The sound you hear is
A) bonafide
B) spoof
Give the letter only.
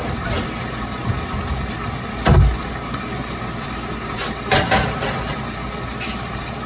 B